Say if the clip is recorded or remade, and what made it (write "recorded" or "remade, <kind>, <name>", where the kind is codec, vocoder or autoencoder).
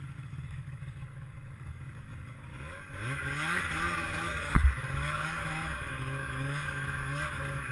remade, codec, DAC